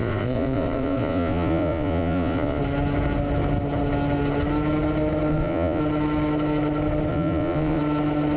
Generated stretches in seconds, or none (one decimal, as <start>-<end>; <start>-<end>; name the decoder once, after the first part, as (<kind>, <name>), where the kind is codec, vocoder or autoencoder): 0.0-2.6 (vocoder, Vocos); 5.3-5.8; 7.1-7.8